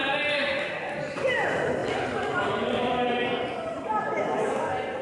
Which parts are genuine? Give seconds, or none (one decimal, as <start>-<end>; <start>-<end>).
1.0-1.8; 3.7-5.0